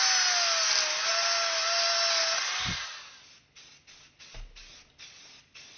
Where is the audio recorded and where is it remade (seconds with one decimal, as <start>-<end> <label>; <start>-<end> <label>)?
0.0-5.8 recorded